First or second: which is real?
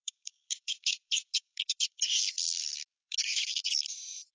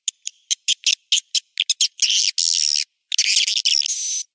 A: second